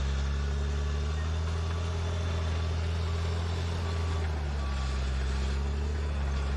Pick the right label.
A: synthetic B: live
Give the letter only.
B